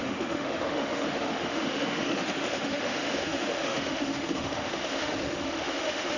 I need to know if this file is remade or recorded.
remade